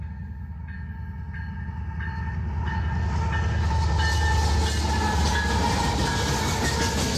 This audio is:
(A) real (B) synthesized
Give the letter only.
A